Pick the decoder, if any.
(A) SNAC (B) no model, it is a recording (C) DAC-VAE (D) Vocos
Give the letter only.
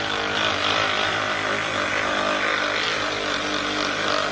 B